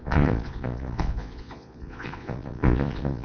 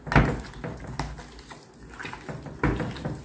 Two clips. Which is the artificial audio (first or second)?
first